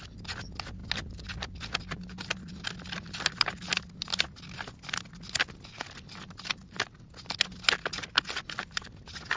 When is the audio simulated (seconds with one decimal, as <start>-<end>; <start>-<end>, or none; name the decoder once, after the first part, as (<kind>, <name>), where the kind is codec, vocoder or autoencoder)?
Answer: none